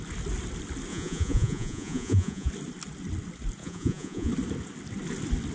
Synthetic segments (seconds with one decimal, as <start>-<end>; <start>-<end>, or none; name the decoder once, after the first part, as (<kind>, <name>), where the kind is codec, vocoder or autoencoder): 0.9-2.5 (vocoder, Vocos); 3.6-4.3